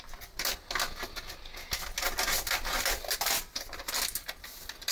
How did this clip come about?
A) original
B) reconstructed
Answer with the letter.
A